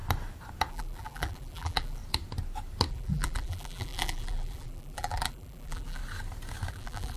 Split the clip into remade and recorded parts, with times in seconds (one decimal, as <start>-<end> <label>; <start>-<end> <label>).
0.0-0.7 recorded; 0.7-2.0 remade; 2.0-2.9 recorded; 2.9-6.0 remade; 6.0-6.7 recorded; 6.7-7.2 remade